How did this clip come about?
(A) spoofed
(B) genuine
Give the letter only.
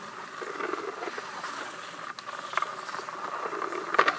B